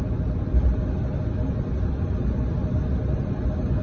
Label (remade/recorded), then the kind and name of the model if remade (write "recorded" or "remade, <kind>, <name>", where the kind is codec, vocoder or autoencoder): recorded